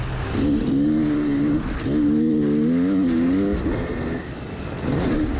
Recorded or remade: recorded